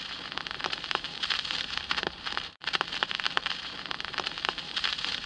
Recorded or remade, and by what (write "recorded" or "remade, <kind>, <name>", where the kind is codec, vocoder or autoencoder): remade, vocoder, BigVGAN v2